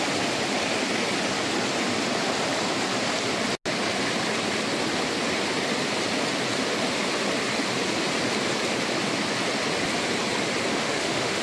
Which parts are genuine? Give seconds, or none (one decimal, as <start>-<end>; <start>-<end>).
0.0-10.7